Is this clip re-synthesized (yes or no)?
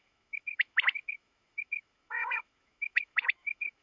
yes